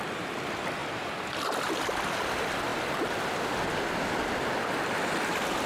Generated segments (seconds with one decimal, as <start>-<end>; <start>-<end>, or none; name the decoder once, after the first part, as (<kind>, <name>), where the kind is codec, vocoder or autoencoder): none